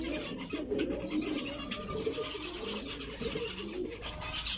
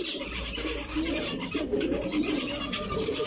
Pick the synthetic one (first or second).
second